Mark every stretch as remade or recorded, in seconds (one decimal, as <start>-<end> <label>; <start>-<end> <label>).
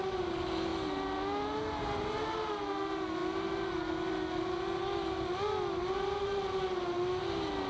0.0-7.7 recorded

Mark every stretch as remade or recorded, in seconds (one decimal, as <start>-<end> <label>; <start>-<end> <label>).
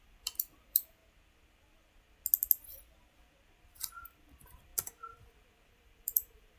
0.0-1.0 remade; 1.0-3.9 recorded; 3.9-4.7 remade; 4.7-5.7 recorded; 5.7-6.6 remade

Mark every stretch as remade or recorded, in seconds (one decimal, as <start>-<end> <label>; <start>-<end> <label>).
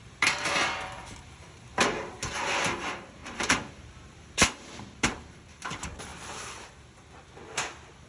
0.0-6.1 remade; 6.1-7.5 recorded; 7.5-8.1 remade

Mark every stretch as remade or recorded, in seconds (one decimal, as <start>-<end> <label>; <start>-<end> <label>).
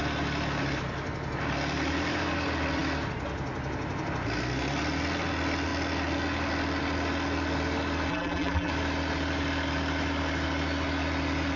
0.0-8.1 recorded; 8.1-8.7 remade; 8.7-11.6 recorded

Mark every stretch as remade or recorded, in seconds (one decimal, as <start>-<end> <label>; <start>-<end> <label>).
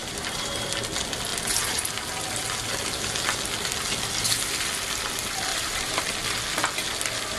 0.0-0.7 remade; 0.7-5.5 recorded; 5.5-6.0 remade; 6.0-7.4 recorded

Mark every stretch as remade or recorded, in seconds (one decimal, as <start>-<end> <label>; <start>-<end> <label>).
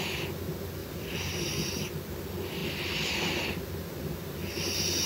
0.0-0.8 recorded; 0.8-1.9 remade; 1.9-5.1 recorded